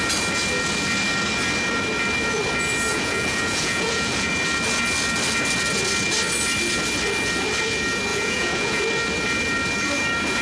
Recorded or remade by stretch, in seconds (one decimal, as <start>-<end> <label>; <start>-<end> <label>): 0.0-2.9 recorded; 2.9-4.3 remade; 4.3-8.1 recorded; 8.1-8.8 remade; 8.8-10.4 recorded